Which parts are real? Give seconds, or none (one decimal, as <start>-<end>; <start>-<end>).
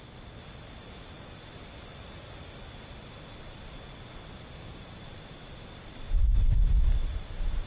0.0-7.7